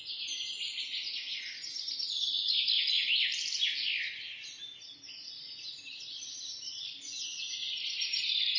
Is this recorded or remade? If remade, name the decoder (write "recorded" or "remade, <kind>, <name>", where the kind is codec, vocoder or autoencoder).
recorded